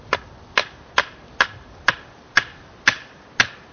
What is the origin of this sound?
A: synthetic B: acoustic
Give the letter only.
B